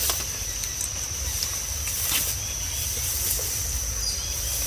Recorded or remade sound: recorded